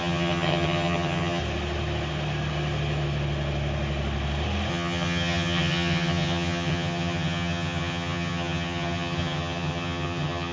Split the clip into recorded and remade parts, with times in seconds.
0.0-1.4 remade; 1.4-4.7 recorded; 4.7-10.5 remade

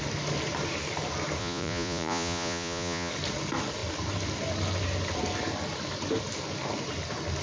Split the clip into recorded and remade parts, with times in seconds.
0.0-1.4 recorded; 1.4-3.1 remade; 3.1-7.4 recorded